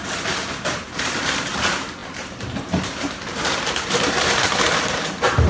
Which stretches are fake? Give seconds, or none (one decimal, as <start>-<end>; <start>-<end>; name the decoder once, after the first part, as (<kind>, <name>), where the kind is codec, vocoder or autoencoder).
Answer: 0.6-5.5 (vocoder, BigVGAN v2)